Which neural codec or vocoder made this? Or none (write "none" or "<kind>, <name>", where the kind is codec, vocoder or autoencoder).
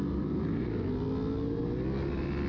none